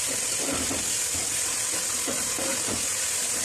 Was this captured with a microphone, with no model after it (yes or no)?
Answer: yes